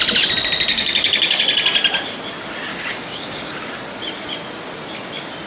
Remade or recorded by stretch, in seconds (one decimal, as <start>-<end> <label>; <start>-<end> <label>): 0.0-0.7 recorded; 0.7-1.4 remade; 1.4-2.7 recorded; 2.7-3.5 remade; 3.5-5.5 recorded

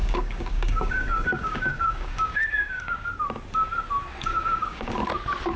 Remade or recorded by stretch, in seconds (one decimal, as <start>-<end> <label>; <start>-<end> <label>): 0.0-3.1 remade; 3.1-4.3 recorded; 4.3-4.9 remade; 4.9-5.6 recorded